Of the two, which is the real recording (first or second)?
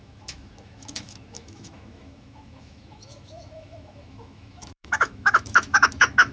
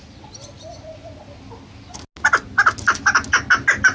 second